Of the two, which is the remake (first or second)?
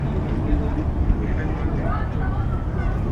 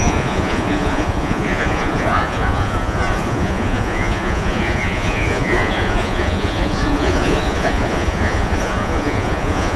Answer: second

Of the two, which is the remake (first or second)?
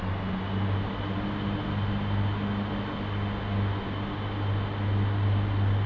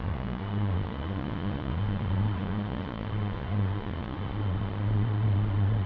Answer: second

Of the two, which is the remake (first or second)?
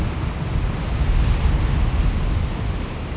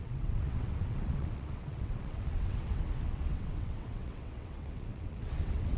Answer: second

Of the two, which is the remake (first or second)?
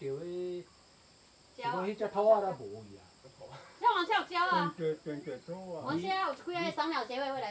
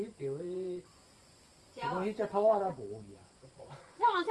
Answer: second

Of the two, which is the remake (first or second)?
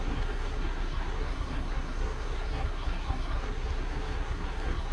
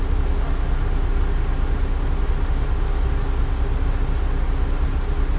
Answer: first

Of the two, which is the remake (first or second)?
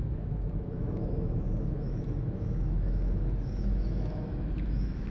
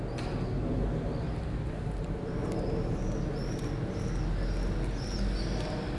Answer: first